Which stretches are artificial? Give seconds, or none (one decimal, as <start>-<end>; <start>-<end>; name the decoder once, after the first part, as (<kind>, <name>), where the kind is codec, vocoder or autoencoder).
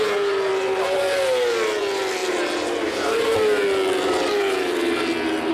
none